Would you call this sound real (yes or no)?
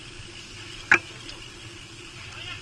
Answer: yes